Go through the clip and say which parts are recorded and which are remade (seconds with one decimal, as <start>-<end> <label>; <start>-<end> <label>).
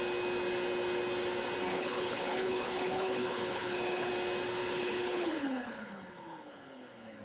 0.0-1.7 recorded; 1.7-4.1 remade; 4.1-4.6 recorded; 4.6-7.2 remade